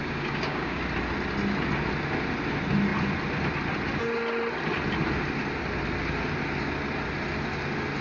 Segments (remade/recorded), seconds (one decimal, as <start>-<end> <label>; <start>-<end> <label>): 0.0-0.8 remade; 0.8-8.0 recorded